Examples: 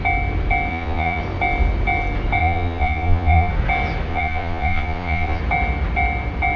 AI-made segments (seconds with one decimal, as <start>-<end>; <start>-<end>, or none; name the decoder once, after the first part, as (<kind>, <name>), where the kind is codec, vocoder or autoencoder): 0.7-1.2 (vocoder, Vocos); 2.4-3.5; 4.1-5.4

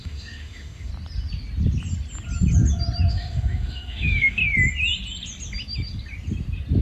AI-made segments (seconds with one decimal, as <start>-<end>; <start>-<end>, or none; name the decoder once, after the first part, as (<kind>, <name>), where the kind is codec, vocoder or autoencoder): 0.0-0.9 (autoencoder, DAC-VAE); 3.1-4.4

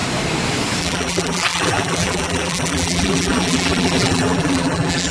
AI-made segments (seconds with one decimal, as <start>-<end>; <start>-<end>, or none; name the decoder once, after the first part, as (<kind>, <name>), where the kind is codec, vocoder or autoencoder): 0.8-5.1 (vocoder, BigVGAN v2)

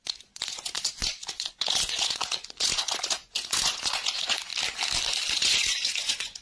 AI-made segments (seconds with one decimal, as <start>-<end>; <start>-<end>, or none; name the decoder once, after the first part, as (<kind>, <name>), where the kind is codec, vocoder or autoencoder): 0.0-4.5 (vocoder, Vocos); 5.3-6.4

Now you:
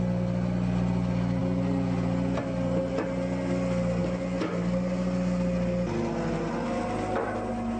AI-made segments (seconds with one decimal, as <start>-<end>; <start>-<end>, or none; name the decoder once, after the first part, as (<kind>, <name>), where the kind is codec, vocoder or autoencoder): none

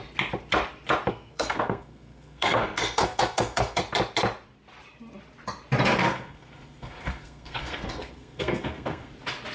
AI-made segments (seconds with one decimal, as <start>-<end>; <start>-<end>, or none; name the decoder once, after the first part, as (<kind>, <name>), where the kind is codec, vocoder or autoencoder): 1.1-3.8 (codec, SNAC); 6.0-9.1

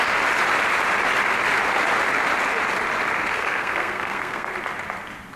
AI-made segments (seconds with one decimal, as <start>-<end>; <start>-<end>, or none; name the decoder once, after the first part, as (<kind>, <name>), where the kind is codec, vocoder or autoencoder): 3.3-4.5 (codec, SNAC)